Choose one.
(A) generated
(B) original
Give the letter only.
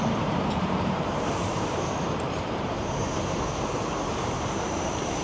A